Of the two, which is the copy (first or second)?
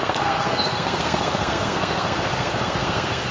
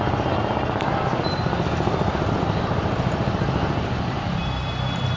first